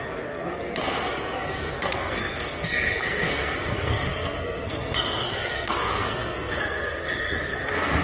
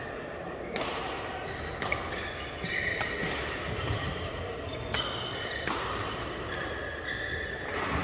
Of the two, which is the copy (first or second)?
first